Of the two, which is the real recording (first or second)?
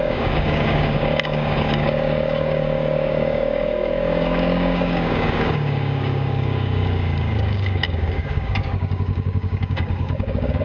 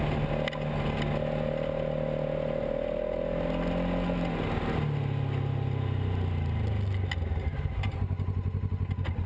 second